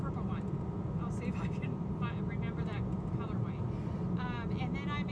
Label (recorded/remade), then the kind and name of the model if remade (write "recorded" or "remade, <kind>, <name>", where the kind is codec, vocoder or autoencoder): recorded